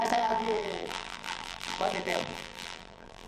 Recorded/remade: remade